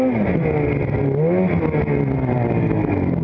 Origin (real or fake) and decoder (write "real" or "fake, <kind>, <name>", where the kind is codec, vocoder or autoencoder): real